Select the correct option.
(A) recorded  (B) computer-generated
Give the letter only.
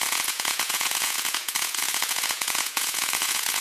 B